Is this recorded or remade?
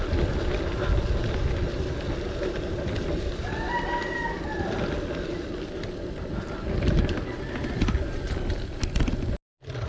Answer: recorded